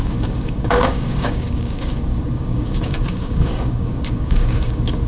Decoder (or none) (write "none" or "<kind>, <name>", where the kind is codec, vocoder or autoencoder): codec, DAC